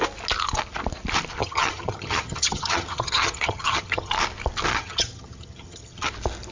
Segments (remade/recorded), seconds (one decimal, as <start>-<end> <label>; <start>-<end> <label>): 0.0-1.4 recorded; 1.4-4.1 remade; 4.1-4.7 recorded; 4.7-6.1 remade; 6.1-6.5 recorded